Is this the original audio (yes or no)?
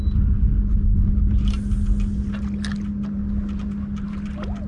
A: yes